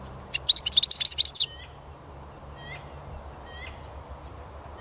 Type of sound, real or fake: real